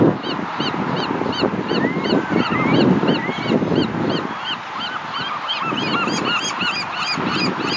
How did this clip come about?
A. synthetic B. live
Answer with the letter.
B